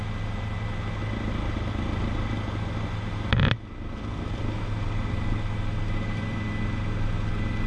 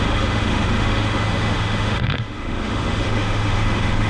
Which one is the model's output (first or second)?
second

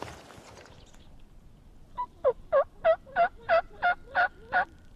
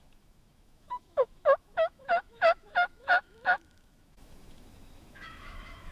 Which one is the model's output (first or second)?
second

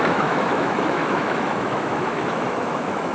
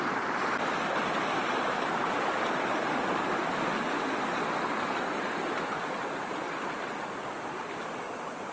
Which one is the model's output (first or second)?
first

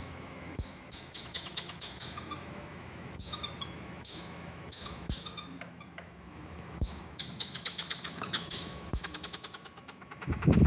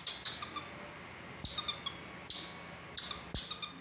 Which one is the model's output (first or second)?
first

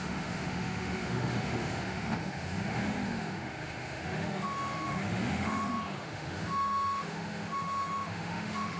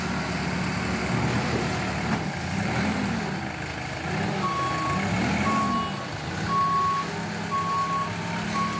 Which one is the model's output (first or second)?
first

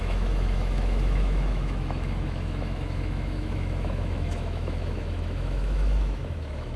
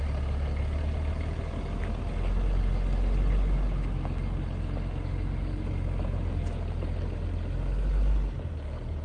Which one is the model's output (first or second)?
first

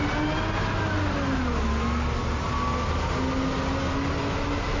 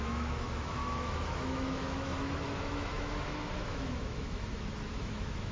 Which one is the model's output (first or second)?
second